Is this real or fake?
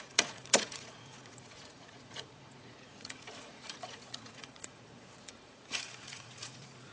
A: fake